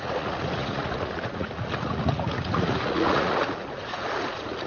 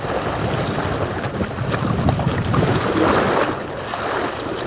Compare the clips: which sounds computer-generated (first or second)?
first